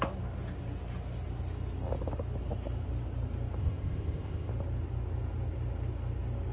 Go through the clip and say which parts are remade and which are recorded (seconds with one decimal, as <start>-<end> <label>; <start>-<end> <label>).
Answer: 0.0-3.6 recorded; 3.6-4.5 remade; 4.5-6.5 recorded